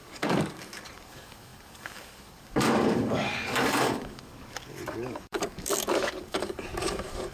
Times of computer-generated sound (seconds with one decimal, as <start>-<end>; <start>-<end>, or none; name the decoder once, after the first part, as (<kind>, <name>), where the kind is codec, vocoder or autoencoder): 0.0-7.3 (codec, DAC)